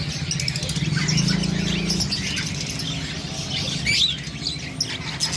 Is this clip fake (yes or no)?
no